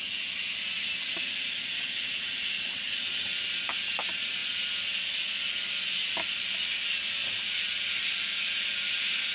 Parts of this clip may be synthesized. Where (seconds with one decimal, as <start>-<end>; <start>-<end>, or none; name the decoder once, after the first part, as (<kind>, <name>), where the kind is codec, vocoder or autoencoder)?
none